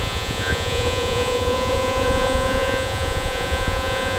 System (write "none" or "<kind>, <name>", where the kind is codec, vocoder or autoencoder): vocoder, Vocos